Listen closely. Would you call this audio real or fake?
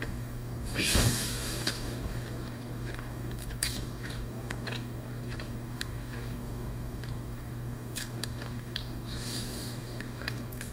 fake